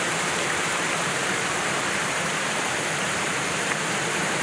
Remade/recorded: remade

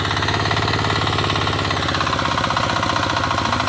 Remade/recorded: recorded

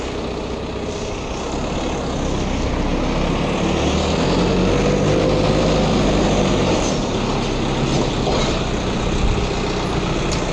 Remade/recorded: recorded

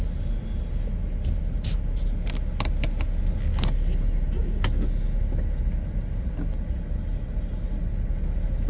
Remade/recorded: recorded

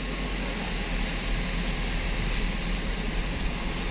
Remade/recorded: recorded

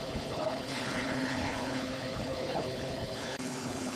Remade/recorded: remade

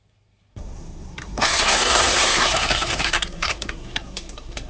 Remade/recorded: remade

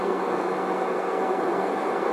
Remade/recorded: remade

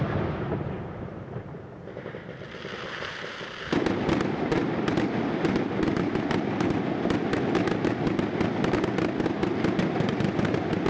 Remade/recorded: recorded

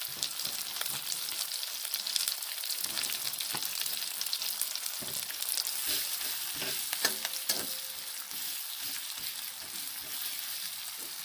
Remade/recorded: recorded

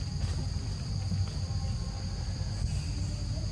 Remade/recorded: recorded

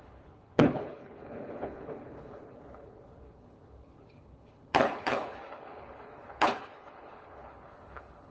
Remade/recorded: remade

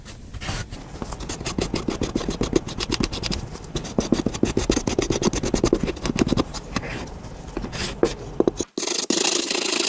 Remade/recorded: recorded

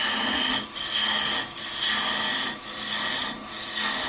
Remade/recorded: recorded